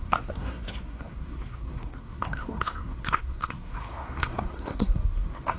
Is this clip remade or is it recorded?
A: remade